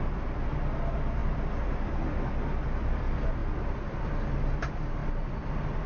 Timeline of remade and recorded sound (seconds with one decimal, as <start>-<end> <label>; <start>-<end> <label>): 0.0-1.2 recorded; 1.2-1.9 remade; 1.9-3.4 recorded; 3.4-4.1 remade; 4.1-5.0 recorded; 5.0-5.9 remade